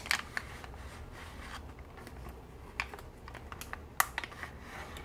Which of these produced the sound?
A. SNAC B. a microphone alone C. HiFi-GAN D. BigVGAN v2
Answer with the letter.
B